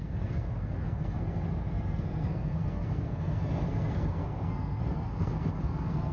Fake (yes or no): yes